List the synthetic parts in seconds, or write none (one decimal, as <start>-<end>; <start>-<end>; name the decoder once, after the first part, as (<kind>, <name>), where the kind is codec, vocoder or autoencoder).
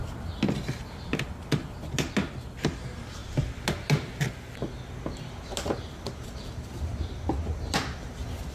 none